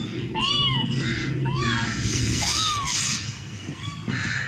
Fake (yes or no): yes